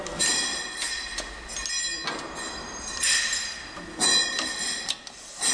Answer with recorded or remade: recorded